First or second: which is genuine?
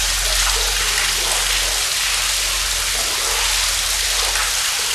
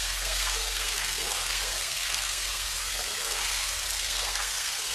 first